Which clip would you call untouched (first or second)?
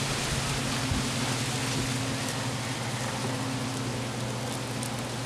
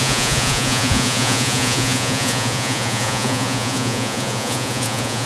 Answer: first